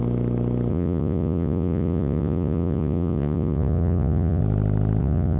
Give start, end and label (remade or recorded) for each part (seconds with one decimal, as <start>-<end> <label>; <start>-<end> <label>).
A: 0.0-0.7 recorded; 0.7-4.4 remade; 4.4-5.0 recorded; 5.0-5.4 remade